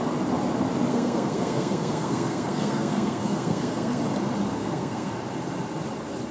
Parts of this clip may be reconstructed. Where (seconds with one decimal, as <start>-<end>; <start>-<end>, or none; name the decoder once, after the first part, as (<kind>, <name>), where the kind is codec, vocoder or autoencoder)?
0.9-4.0 (codec, SNAC); 4.6-5.1